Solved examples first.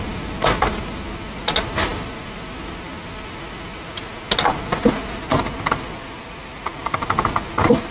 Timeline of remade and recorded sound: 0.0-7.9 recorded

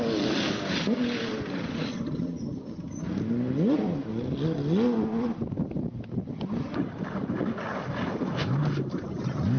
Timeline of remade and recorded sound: 0.0-9.6 recorded

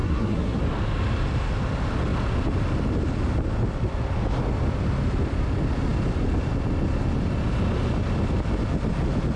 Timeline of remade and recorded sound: 0.0-0.6 remade; 0.6-9.4 recorded

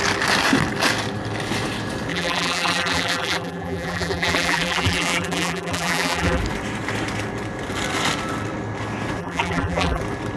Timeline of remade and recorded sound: 0.0-2.1 recorded; 2.1-6.4 remade; 6.4-9.2 recorded; 9.2-10.0 remade; 10.0-10.4 recorded